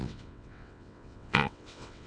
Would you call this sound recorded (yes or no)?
no